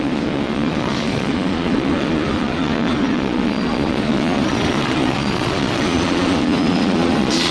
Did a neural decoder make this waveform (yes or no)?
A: yes